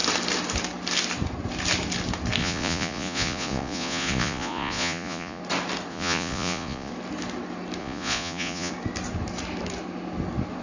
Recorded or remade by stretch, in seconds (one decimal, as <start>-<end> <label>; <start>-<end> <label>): 0.0-2.4 recorded; 2.4-5.4 remade; 5.4-5.9 recorded; 5.9-6.9 remade; 6.9-7.8 recorded; 7.8-8.7 remade; 8.7-10.6 recorded